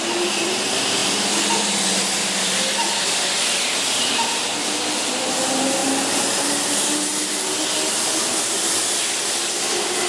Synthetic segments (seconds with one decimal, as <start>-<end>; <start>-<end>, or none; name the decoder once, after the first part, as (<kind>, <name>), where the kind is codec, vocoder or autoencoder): none

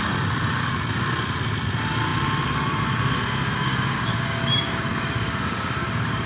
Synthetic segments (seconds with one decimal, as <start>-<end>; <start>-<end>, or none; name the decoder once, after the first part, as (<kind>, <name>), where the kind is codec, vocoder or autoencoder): 3.6-6.3 (codec, DAC)

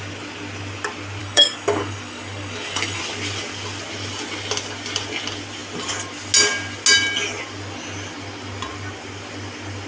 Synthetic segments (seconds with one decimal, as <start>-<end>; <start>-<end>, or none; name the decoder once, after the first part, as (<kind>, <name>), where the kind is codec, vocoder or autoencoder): 1.2-3.0 (codec, DAC)

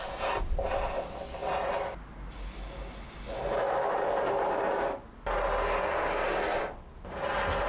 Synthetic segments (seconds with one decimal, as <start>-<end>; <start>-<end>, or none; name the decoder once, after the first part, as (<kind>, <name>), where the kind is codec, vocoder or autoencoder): none

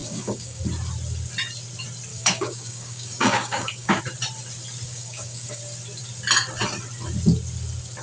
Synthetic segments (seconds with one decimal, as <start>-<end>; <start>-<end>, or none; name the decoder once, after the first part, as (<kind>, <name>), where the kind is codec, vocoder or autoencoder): 0.0-0.6 (codec, DAC); 2.1-4.0; 4.9-5.6